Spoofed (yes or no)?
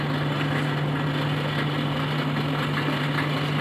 no